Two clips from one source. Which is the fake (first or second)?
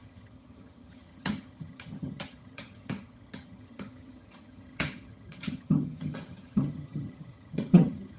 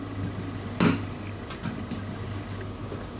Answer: first